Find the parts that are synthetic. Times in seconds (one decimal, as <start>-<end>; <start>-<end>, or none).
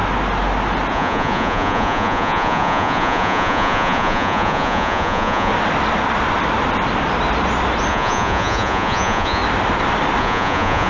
0.9-5.5; 7.9-9.4; 10.2-10.9